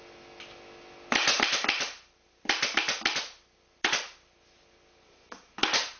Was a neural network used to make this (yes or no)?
no